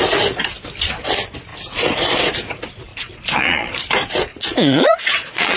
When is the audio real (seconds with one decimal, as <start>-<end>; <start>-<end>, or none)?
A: 0.0-2.9; 3.7-4.3